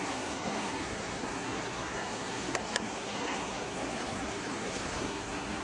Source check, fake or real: fake